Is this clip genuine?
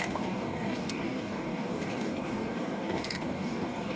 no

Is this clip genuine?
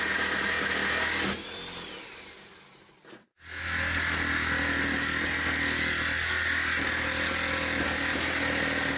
yes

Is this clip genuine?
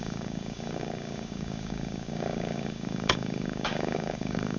no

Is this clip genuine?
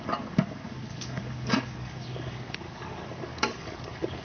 no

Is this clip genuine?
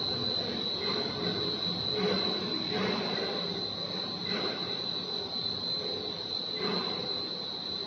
yes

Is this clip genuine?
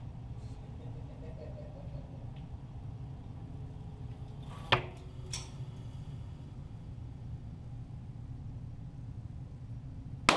yes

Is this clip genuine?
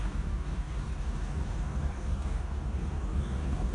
no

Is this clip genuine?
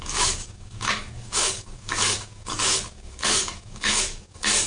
no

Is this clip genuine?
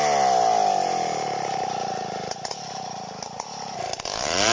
yes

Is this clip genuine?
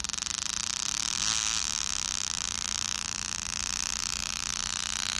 yes